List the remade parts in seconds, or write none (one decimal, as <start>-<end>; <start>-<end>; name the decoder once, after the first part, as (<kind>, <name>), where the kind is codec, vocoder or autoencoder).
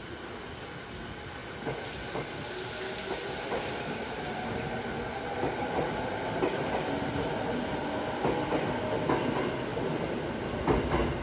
none